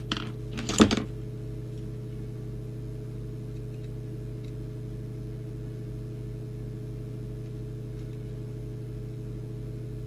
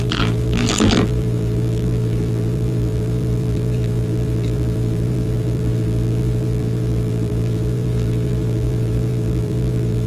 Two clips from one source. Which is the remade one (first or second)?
second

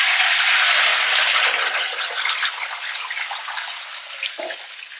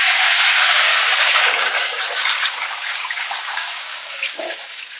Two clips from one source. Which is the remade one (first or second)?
second